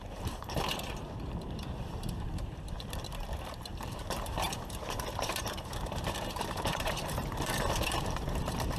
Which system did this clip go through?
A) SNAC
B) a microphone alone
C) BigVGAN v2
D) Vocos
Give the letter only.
C